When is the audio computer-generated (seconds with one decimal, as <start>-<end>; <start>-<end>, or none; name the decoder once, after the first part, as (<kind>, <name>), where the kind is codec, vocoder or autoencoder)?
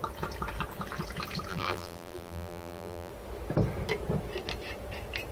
1.5-3.1 (vocoder, BigVGAN v2)